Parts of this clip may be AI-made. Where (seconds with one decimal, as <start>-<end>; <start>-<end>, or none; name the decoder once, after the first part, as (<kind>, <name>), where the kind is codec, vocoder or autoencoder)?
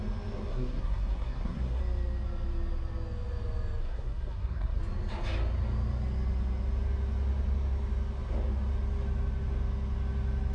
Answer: 0.5-1.8 (codec, SNAC); 3.8-4.8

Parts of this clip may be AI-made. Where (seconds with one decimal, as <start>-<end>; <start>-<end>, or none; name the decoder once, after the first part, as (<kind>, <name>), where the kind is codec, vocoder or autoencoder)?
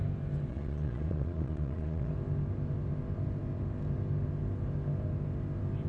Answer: 0.5-2.1 (vocoder, Vocos)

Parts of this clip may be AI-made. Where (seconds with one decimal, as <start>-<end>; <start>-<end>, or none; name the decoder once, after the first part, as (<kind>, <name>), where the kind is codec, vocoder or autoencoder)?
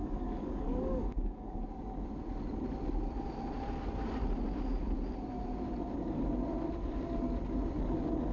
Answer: 0.0-1.8 (codec, DAC)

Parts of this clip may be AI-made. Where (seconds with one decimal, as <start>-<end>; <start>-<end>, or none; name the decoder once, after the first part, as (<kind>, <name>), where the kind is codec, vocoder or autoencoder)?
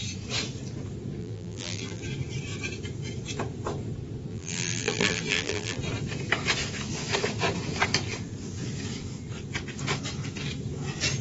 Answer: 1.2-2.0 (vocoder, BigVGAN v2); 4.3-5.8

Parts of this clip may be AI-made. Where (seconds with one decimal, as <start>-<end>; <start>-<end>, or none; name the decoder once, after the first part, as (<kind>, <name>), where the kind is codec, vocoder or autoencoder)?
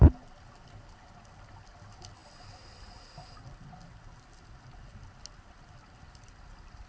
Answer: none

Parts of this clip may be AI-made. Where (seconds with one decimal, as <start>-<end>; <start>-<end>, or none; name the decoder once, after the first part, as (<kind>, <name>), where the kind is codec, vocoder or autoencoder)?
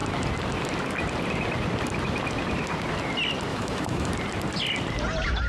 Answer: 3.5-4.1 (autoencoder, DAC-VAE)